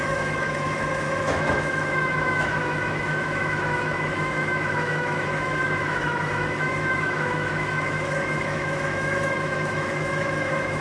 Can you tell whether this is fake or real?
fake